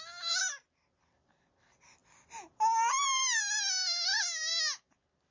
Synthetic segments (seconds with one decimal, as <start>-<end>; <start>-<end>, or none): 0.0-2.0; 2.9-4.5